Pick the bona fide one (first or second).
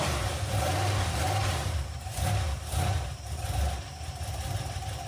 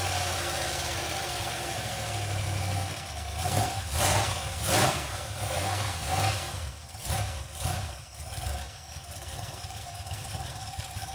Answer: first